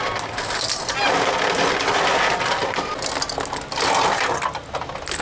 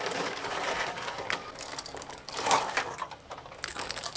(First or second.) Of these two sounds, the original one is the first